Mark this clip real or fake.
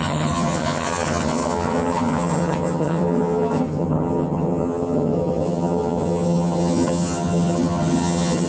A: fake